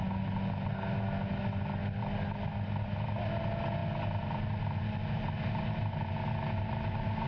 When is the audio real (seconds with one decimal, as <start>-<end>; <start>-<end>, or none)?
0.0-7.3